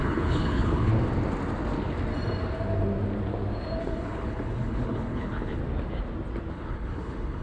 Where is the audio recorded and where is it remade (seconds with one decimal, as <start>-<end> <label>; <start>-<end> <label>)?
0.0-0.9 remade; 0.9-3.8 recorded; 3.8-5.6 remade; 5.6-6.5 recorded; 6.5-7.4 remade